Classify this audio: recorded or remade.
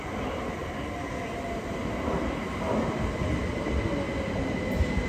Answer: recorded